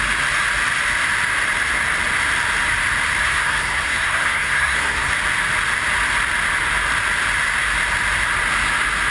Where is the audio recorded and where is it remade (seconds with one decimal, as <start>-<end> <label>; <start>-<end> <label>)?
0.0-3.2 recorded; 3.2-5.1 remade; 5.1-9.1 recorded